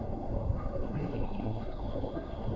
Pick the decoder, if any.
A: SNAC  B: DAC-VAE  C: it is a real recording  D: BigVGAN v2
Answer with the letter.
A